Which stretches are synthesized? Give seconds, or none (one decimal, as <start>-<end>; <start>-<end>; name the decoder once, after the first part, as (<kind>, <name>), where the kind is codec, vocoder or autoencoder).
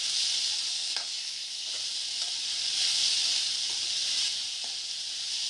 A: 0.7-1.7 (codec, SNAC)